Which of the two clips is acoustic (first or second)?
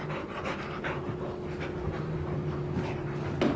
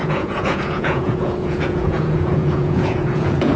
first